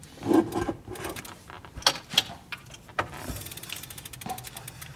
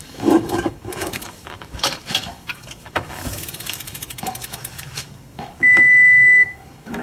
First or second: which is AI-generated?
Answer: second